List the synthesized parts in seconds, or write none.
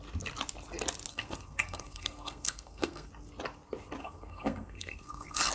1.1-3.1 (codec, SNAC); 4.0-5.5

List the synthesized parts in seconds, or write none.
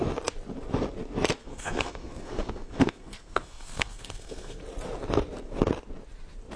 1.4-4.6 (codec, SNAC)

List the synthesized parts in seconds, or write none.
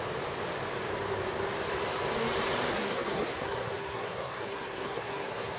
2.7-5.6 (codec, SNAC)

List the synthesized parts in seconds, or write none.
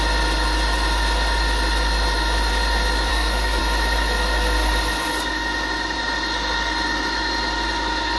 3.1-3.6 (codec, SNAC)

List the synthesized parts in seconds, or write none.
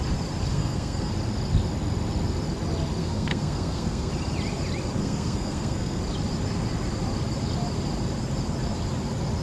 0.5-1.1 (codec, SNAC); 3.0-4.1; 5.0-6.0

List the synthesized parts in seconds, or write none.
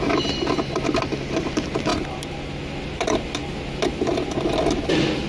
none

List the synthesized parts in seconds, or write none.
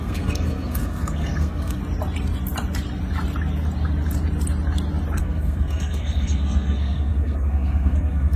0.0-1.8 (codec, SNAC); 5.2-8.4